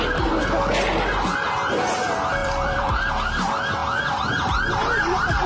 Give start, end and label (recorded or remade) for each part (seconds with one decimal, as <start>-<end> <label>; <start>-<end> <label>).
0.0-2.4 recorded; 2.4-3.1 remade; 3.1-5.5 recorded